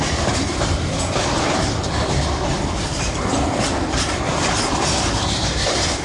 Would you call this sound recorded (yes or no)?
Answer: no